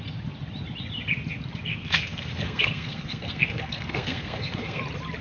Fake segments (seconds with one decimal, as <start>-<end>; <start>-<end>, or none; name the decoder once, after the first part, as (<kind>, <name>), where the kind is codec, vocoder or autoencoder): 1.7-4.8 (codec, SNAC)